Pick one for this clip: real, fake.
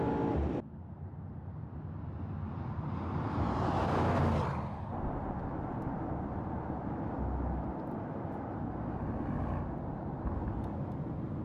real